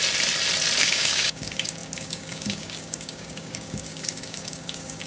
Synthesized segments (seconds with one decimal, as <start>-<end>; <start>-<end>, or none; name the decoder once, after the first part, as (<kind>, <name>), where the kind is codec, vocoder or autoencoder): 0.8-5.1 (codec, DAC)